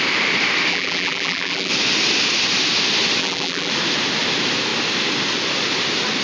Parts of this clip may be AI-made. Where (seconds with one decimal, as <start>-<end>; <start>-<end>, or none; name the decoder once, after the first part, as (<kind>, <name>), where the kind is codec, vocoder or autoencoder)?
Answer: 0.7-1.7 (vocoder, BigVGAN v2); 3.2-3.7